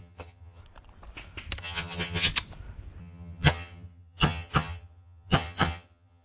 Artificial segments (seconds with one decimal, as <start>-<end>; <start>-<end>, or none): 0.0-0.6; 1.6-2.3; 3.0-6.2